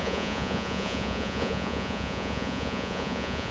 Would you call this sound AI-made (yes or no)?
yes